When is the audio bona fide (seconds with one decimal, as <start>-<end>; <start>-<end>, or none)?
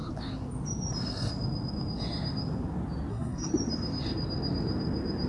0.0-3.1; 3.5-5.3